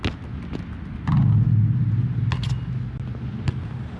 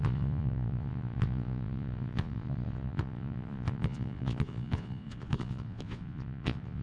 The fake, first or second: second